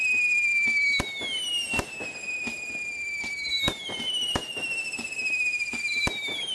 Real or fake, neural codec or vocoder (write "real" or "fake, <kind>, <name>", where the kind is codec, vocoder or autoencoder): real